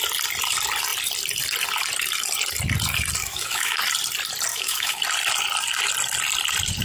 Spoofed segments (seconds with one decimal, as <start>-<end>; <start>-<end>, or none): 3.2-3.8; 4.5-5.0